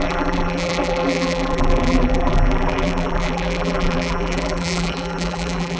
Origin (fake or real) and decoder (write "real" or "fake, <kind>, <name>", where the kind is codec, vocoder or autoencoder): fake, vocoder, BigVGAN v2